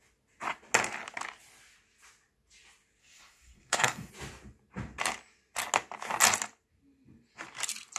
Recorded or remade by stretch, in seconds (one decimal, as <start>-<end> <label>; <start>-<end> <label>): 0.0-3.0 recorded; 3.0-4.1 remade; 4.1-8.0 recorded